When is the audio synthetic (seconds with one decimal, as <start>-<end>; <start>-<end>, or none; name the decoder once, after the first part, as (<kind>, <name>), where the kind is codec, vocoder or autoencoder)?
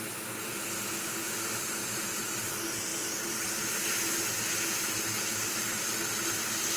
1.8-2.5 (vocoder, BigVGAN v2); 2.9-3.6